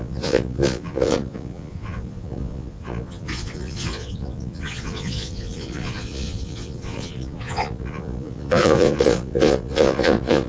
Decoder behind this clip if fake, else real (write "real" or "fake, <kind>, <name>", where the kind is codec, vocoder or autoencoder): fake, vocoder, Vocos